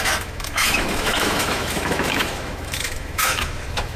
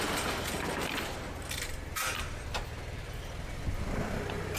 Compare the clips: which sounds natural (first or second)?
second